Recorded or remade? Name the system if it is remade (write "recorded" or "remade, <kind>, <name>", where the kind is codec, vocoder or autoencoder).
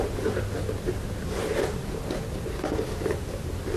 recorded